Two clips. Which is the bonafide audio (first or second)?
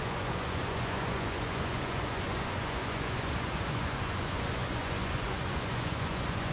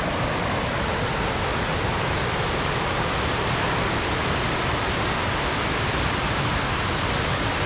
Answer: second